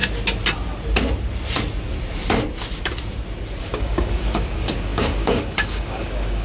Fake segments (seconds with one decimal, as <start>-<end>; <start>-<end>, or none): 3.6-6.4